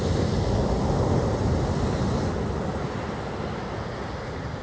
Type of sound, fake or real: real